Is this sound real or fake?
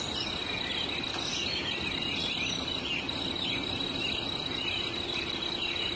real